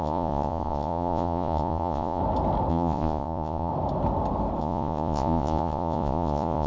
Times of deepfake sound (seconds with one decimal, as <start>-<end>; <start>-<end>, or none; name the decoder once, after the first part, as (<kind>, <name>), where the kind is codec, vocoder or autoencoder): 0.0-2.2 (vocoder, Vocos); 2.7-3.7; 4.6-6.7